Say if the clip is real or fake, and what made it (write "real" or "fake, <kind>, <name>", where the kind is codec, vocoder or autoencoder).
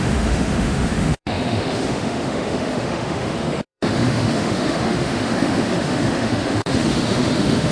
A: fake, autoencoder, DAC-VAE